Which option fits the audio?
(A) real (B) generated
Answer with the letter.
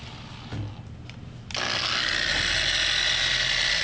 A